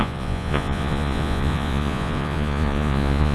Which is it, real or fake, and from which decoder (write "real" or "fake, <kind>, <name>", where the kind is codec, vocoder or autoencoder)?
fake, vocoder, Vocos